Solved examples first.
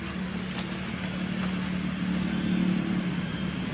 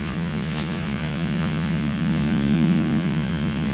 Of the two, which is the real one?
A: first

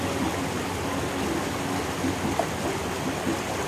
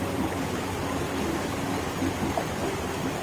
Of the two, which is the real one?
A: first